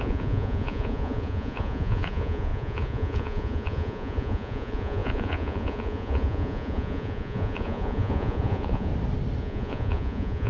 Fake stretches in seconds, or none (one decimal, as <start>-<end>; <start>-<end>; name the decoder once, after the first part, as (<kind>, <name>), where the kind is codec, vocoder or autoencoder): 0.0-8.9 (vocoder, Vocos); 9.4-10.5